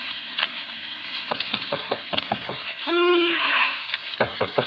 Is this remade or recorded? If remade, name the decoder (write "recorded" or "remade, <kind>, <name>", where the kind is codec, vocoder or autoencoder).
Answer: remade, codec, SNAC